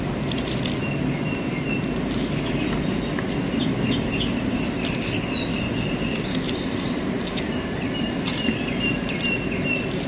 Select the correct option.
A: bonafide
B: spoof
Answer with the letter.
A